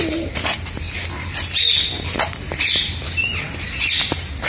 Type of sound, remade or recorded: recorded